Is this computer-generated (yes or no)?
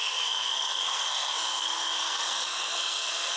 yes